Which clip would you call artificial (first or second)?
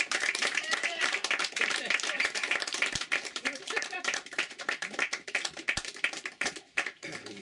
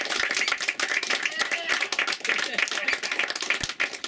first